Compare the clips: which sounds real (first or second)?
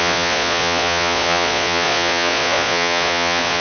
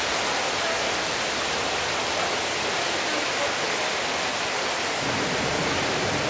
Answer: second